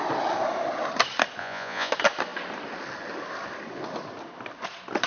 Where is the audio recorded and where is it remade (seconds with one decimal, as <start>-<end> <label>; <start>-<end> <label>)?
0.0-1.4 recorded; 1.4-1.9 remade; 1.9-5.1 recorded